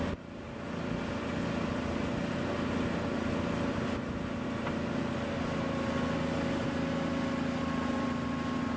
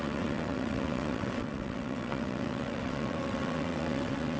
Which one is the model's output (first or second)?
second